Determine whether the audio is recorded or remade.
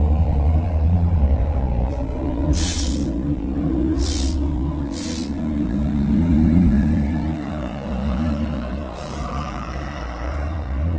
remade